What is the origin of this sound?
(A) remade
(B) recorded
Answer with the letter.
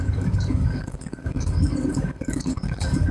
A